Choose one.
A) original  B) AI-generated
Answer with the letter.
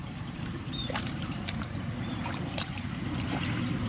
B